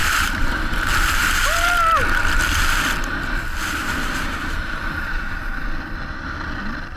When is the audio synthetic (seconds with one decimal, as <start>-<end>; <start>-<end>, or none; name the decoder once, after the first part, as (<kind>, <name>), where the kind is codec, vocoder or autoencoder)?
0.0-2.6 (vocoder, BigVGAN v2); 3.8-5.5